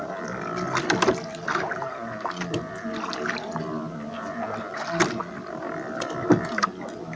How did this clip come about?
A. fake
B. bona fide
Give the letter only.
B